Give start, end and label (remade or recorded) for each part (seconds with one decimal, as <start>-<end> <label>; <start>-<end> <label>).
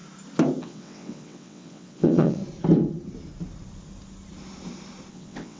0.0-0.6 recorded; 0.6-2.4 remade; 2.4-5.1 recorded; 5.1-5.6 remade